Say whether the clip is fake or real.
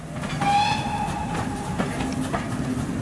real